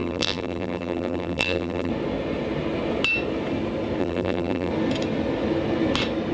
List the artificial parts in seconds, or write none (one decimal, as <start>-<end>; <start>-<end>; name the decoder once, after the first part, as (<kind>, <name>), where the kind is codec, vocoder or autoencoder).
0.0-1.9 (vocoder, BigVGAN v2); 4.0-4.7